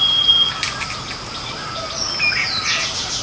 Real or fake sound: real